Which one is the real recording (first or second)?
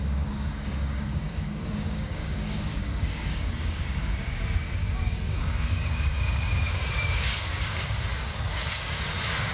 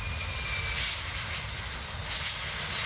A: second